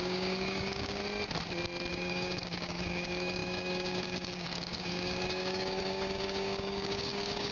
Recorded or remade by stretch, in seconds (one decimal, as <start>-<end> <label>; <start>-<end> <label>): 0.0-1.0 remade; 1.0-1.9 recorded; 1.9-7.5 remade